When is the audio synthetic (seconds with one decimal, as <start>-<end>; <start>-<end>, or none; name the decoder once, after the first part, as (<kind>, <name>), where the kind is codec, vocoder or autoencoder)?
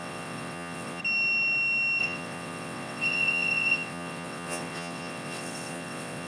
0.0-1.0 (vocoder, WaveNeXt); 2.0-6.3